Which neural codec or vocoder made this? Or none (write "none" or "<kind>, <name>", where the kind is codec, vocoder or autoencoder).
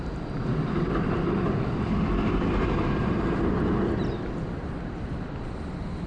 none